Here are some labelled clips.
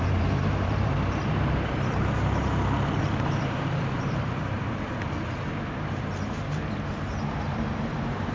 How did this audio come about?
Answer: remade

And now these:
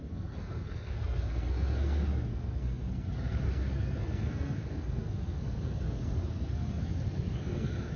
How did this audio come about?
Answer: remade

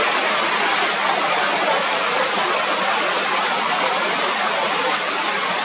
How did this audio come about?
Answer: recorded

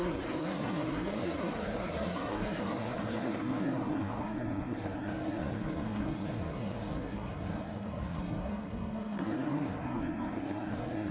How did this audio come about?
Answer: remade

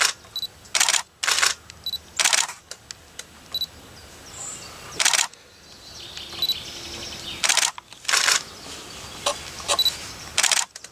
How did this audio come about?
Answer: recorded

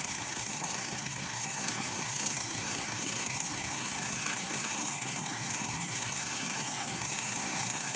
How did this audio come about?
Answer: remade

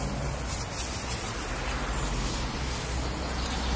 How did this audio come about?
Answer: recorded